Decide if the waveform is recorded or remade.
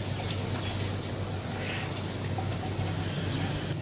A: recorded